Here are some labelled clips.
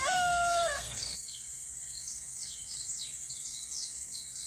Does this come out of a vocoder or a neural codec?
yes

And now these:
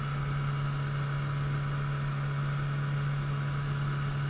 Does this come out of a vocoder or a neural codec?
no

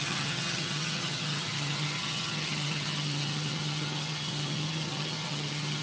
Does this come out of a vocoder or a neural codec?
yes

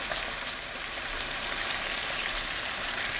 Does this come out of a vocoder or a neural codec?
no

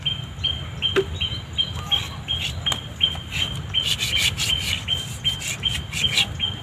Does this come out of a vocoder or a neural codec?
no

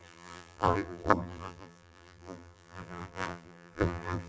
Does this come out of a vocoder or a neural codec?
yes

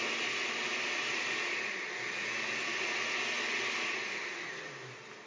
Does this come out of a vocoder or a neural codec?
no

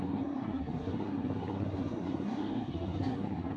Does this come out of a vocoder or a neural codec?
yes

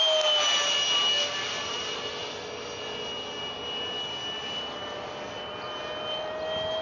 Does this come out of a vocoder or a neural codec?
no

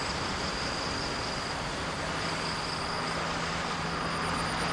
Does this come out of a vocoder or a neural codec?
no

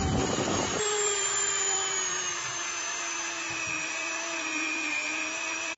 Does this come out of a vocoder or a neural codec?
yes